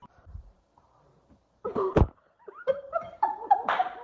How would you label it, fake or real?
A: fake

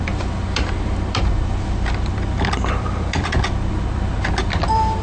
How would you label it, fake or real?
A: fake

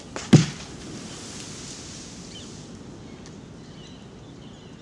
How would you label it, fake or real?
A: real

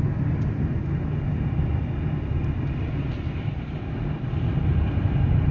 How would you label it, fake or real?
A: real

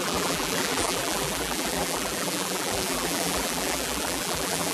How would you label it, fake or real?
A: fake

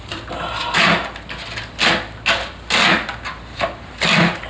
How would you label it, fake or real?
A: real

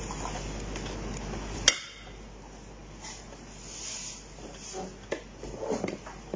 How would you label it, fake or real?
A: real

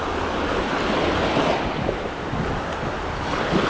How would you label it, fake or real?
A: real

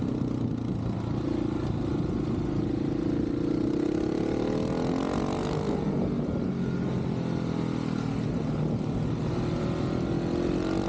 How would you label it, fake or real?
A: real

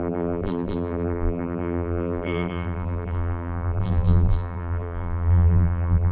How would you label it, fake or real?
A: fake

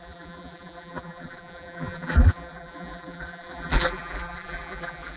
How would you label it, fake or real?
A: fake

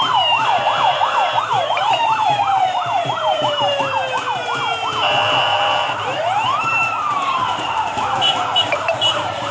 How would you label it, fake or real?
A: fake